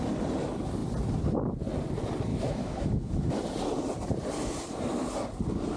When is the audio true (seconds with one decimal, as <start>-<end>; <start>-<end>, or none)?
0.0-2.3; 3.3-5.8